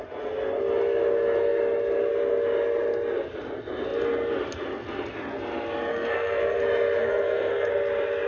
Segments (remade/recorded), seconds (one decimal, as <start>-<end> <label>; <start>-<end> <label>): 0.0-5.9 recorded; 5.9-6.6 remade; 6.6-7.0 recorded; 7.0-7.7 remade; 7.7-8.3 recorded